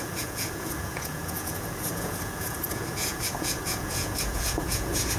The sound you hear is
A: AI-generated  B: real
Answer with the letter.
A